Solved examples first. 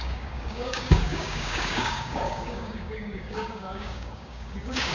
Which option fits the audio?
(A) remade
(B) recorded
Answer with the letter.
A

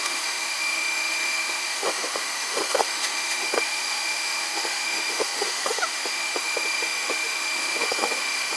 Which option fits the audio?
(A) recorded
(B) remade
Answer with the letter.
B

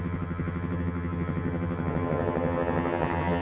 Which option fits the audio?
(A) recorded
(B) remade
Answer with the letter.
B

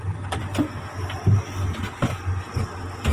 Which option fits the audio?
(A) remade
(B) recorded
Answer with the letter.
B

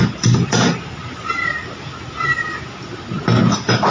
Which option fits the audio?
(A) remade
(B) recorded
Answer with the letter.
B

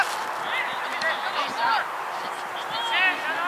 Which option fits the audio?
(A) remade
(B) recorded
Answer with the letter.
B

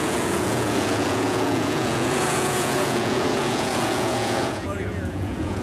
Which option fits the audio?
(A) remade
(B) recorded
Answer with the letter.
A